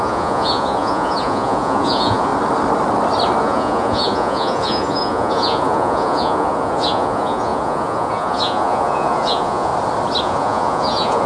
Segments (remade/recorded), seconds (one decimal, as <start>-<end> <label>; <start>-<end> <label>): 0.0-2.3 remade; 2.3-3.4 recorded; 3.4-9.7 remade; 9.7-10.2 recorded; 10.2-11.3 remade